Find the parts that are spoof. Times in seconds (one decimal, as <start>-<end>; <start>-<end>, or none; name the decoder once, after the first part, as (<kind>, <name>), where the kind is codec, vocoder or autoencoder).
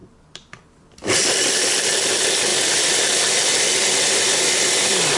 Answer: none